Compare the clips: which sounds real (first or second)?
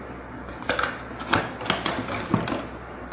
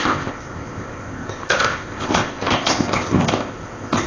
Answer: first